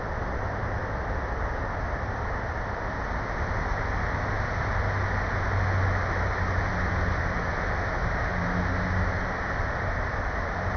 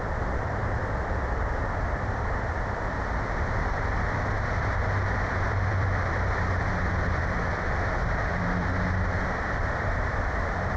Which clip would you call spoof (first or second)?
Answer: second